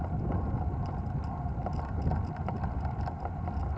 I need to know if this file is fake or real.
real